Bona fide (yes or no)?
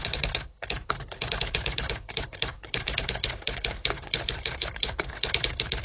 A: no